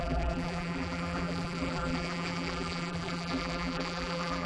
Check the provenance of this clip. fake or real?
fake